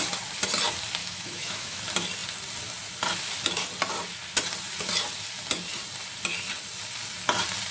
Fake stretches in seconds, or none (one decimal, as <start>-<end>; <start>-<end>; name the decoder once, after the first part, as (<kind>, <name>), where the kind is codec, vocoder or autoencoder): 1.0-1.8 (autoencoder, DAC-VAE)